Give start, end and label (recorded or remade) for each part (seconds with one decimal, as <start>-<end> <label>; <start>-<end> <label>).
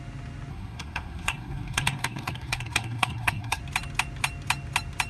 0.0-0.5 recorded; 0.5-3.6 remade; 3.6-5.1 recorded